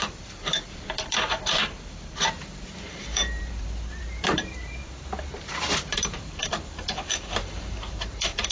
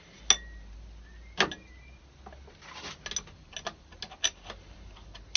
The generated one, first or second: first